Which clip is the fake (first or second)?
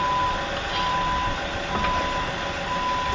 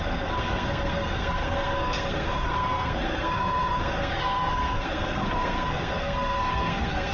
second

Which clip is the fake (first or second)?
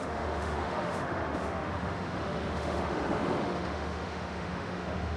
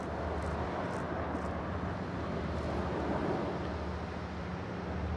first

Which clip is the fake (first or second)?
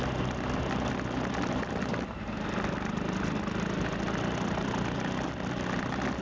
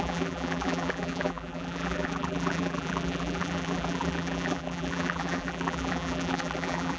second